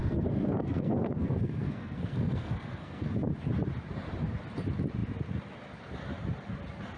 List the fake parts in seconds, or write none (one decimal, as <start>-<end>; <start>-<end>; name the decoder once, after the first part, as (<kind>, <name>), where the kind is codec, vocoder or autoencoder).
0.0-3.1 (codec, SNAC)